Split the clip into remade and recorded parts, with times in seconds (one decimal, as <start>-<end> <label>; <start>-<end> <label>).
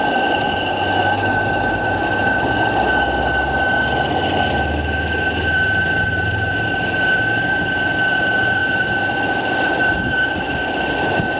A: 0.0-11.4 recorded